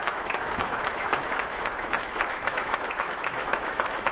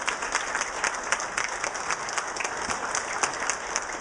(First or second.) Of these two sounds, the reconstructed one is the first